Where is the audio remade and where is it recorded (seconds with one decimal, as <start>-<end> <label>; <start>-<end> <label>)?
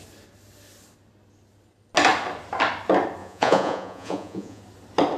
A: 0.0-3.2 recorded; 3.2-4.6 remade; 4.6-5.2 recorded